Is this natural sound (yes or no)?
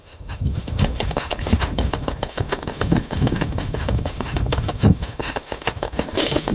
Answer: no